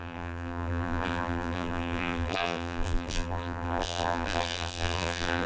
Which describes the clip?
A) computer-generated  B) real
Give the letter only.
A